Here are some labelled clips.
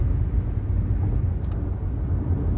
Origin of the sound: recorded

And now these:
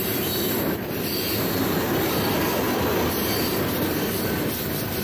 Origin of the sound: recorded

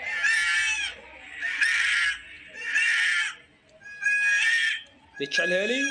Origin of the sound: recorded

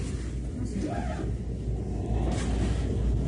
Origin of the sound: recorded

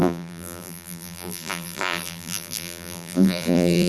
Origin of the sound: remade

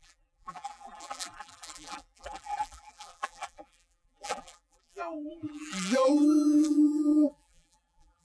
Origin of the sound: remade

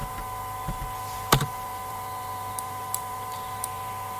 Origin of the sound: remade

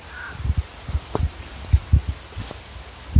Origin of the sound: recorded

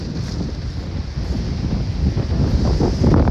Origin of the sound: recorded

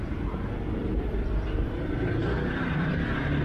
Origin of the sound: remade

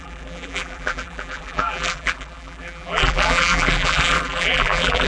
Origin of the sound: remade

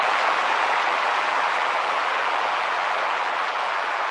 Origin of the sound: remade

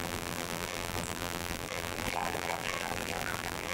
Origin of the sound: remade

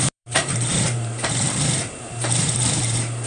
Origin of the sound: remade